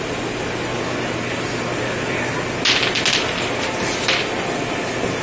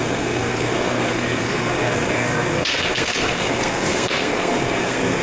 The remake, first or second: second